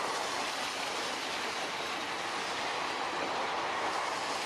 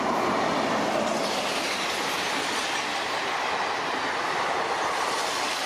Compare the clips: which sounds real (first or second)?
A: first